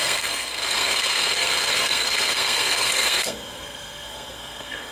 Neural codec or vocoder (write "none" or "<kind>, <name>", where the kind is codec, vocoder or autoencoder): codec, SNAC